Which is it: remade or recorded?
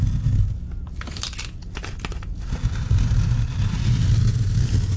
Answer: recorded